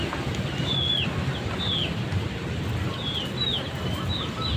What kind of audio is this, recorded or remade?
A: recorded